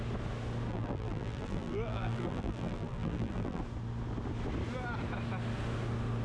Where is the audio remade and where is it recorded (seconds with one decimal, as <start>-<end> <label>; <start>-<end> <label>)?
0.0-0.7 recorded; 0.7-3.6 remade; 3.6-6.2 recorded

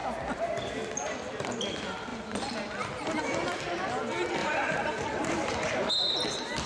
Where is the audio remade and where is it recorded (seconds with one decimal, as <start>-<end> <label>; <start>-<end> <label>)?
0.0-2.1 recorded; 2.1-3.2 remade; 3.2-4.4 recorded; 4.4-5.7 remade; 5.7-6.7 recorded